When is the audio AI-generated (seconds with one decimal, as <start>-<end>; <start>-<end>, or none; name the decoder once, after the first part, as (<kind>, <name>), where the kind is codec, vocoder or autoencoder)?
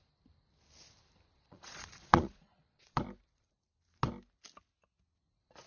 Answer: 1.4-3.0 (vocoder, Vocos)